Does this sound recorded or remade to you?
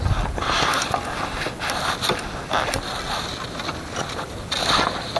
recorded